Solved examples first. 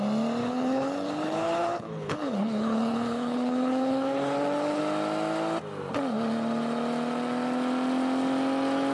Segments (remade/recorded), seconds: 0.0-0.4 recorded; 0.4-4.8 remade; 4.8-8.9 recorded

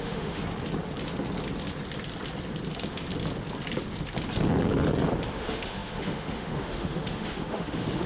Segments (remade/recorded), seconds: 0.0-0.4 remade; 0.4-5.3 recorded; 5.3-8.1 remade

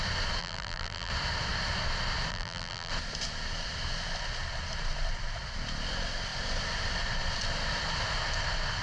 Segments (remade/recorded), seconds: 0.0-0.4 recorded; 0.4-1.1 remade; 1.1-2.3 recorded; 2.3-2.9 remade; 2.9-8.8 recorded

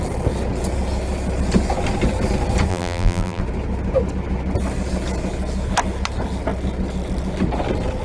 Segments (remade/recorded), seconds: 0.0-2.7 recorded; 2.7-3.4 remade; 3.4-8.0 recorded

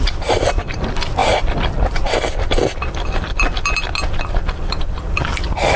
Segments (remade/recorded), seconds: 0.0-5.8 recorded

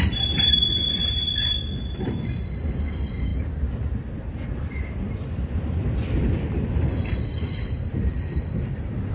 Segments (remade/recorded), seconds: 0.0-0.6 remade; 0.6-1.7 recorded; 1.7-3.3 remade; 3.3-4.6 recorded; 4.6-9.1 remade